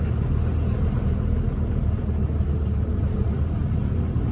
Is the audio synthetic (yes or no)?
no